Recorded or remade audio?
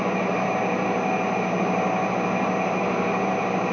recorded